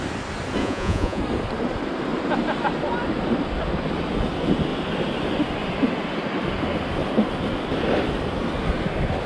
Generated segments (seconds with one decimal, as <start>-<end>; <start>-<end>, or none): 0.6-1.2